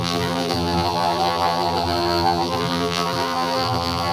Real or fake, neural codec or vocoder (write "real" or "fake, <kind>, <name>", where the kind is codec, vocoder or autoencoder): fake, vocoder, BigVGAN v2